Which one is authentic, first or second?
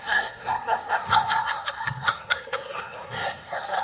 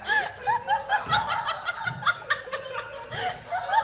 second